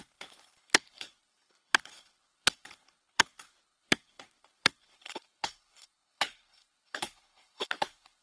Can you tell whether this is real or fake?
fake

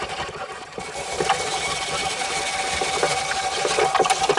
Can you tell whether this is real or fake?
real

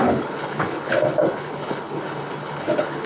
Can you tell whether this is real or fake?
fake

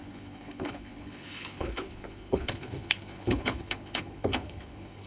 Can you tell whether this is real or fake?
fake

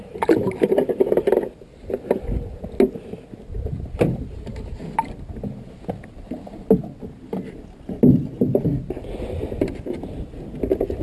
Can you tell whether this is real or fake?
real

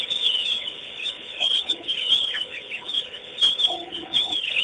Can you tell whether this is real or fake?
fake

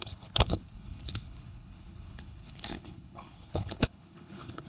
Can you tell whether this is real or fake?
fake